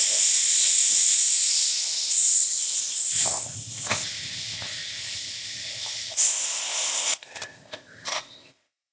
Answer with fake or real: fake